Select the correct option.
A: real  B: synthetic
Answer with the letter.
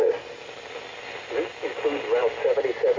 A